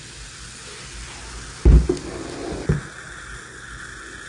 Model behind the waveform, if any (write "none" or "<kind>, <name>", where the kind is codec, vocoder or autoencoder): none